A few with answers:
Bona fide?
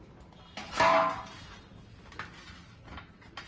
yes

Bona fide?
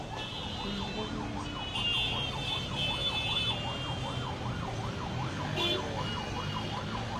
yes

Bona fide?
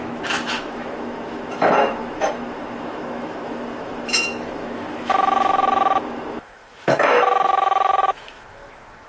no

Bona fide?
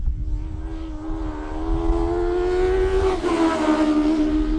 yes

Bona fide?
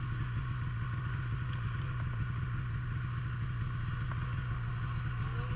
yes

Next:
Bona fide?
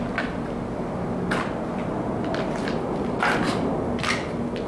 yes